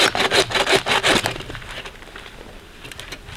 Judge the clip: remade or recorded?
recorded